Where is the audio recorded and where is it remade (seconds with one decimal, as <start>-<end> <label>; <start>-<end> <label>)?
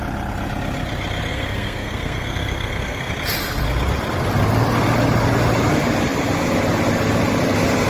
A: 0.0-1.3 recorded; 1.3-3.1 remade; 3.1-7.9 recorded